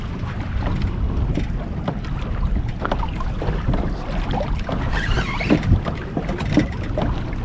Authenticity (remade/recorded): recorded